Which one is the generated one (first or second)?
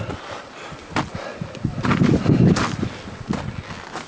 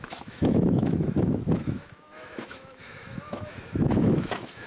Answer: second